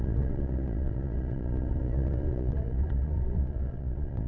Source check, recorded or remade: remade